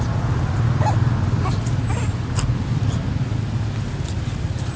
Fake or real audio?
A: real